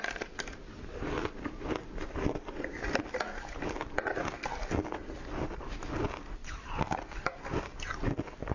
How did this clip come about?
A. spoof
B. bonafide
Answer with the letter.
B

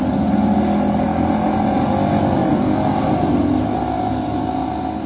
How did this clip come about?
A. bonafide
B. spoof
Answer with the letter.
A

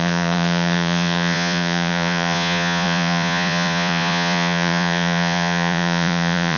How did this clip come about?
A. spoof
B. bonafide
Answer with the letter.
A